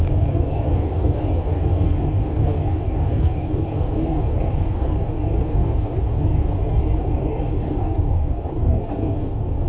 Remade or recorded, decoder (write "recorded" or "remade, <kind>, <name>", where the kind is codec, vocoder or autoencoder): remade, codec, DAC